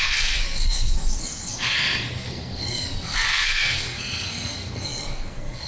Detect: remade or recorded remade